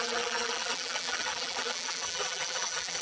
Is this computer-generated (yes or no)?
yes